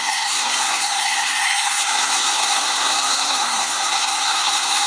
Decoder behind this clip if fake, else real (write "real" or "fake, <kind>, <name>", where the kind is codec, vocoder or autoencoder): fake, codec, SNAC